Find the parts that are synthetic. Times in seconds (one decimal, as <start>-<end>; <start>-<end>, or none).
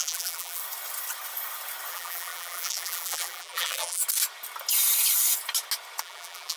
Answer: 0.0-0.6; 1.9-4.0; 6.0-6.6